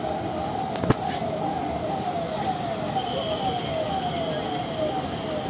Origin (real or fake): real